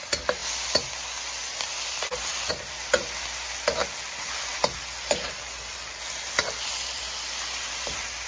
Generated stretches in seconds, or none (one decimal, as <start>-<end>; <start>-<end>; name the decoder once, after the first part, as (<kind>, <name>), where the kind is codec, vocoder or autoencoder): none